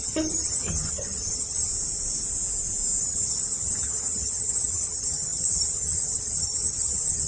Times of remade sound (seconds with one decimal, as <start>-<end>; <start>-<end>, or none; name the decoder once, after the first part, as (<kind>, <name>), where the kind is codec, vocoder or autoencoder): 0.0-1.7 (vocoder, HiFi-GAN); 3.0-7.3